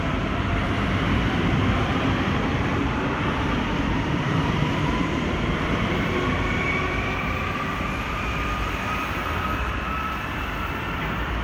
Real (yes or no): no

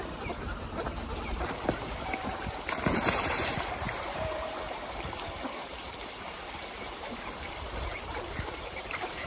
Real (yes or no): no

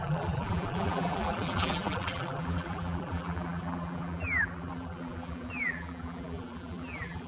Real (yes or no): no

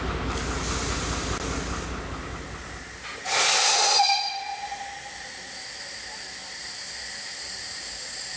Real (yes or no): yes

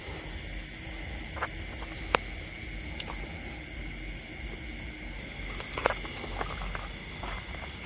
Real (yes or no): yes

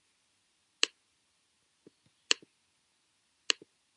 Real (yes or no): yes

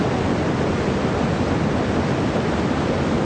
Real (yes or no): yes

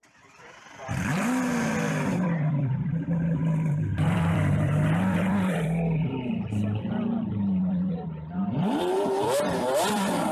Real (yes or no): no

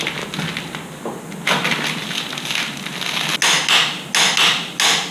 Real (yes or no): yes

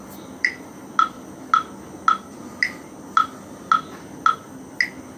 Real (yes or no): yes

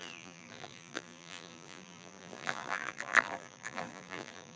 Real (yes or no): no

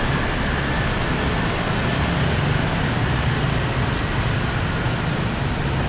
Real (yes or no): yes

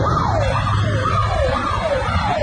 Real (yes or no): no